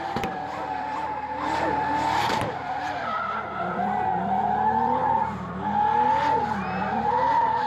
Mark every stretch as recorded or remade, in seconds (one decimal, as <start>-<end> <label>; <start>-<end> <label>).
0.0-5.0 remade; 5.0-6.8 recorded; 6.8-7.7 remade